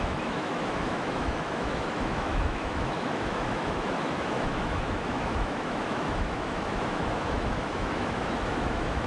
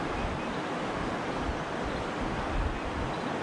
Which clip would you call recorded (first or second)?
second